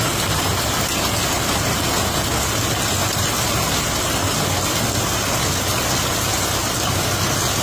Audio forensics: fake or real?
real